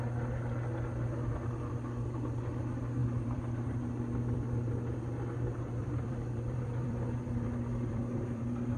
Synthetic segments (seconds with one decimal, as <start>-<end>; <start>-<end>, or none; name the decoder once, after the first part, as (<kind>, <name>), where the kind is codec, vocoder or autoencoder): 3.0-4.7 (vocoder, BigVGAN v2); 5.8-8.4